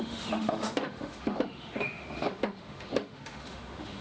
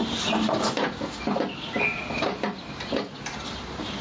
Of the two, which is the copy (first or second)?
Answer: first